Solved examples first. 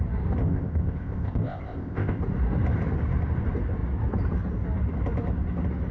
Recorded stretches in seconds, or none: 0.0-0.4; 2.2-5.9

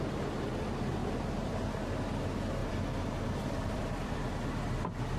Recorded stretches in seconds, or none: 0.0-1.0; 1.6-2.6; 4.3-5.2